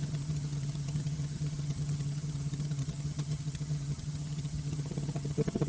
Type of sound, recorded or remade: remade